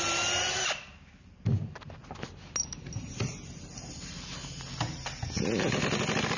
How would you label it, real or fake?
real